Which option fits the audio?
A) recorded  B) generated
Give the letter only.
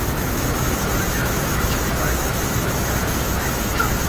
B